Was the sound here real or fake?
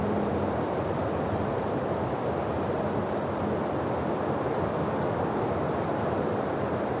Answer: fake